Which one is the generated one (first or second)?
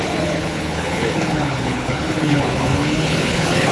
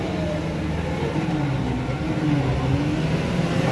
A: first